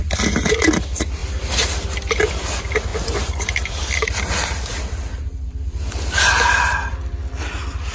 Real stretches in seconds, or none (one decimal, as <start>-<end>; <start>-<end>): 0.0-1.2; 2.2-2.9; 6.3-7.9